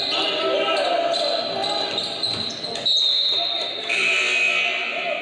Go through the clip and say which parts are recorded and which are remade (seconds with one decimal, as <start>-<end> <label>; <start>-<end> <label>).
0.0-5.2 recorded